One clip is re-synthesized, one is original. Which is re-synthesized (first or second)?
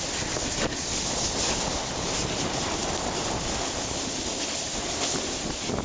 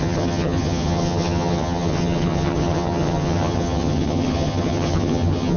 second